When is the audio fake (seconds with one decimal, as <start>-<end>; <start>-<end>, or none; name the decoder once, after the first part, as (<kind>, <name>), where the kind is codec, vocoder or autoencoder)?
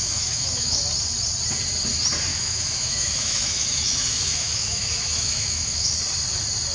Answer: 0.0-0.8 (autoencoder, DAC-VAE); 2.3-5.9